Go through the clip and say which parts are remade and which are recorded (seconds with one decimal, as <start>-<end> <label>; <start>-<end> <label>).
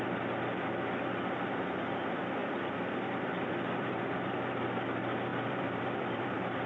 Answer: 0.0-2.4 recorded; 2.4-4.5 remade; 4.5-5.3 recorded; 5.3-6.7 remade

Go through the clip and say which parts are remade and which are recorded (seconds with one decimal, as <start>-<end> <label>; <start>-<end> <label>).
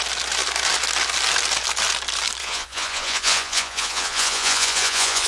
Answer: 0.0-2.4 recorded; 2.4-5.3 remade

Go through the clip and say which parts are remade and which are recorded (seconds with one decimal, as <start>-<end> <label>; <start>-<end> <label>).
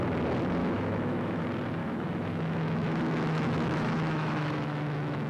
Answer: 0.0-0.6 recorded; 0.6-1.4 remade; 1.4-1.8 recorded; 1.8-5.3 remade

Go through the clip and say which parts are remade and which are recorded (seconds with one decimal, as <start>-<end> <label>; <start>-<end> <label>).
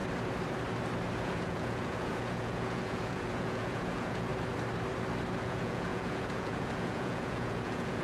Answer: 0.0-1.2 recorded; 1.2-4.3 remade; 4.3-5.4 recorded; 5.4-8.0 remade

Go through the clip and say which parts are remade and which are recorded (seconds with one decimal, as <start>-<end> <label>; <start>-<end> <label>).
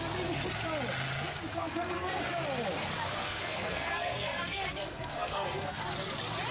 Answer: 0.0-1.5 recorded; 1.5-2.2 remade; 2.2-3.2 recorded; 3.2-5.8 remade; 5.8-6.5 recorded